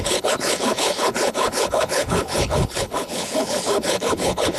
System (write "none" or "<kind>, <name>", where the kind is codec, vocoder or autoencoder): codec, HILCodec